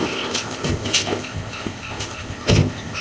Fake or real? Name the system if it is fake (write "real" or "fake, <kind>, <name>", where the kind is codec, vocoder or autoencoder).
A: fake, codec, ZipCodec